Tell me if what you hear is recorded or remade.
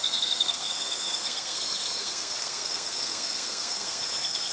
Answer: remade